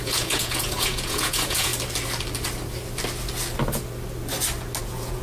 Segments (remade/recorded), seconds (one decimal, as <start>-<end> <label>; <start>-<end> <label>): 0.0-1.7 remade; 1.7-4.8 recorded; 4.8-5.2 remade